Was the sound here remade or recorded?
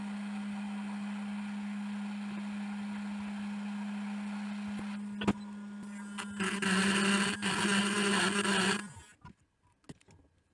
recorded